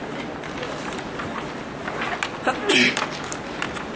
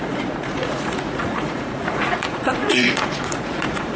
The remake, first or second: second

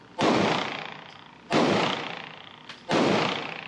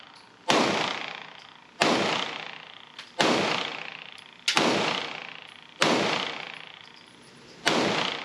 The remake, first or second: first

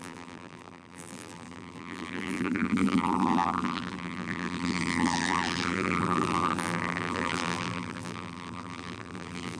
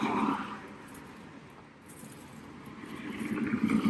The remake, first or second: first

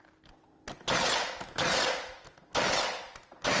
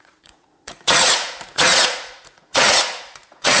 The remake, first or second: second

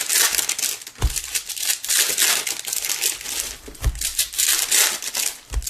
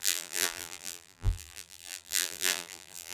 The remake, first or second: second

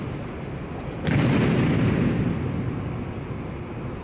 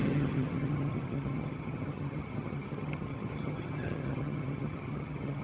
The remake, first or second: second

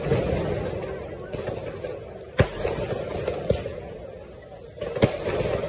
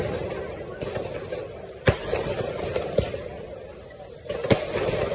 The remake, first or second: second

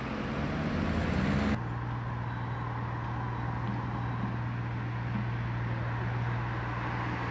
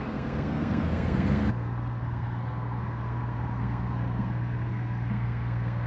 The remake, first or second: second